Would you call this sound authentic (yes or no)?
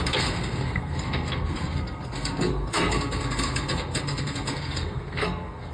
no